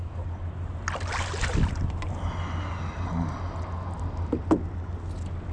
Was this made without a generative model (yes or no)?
yes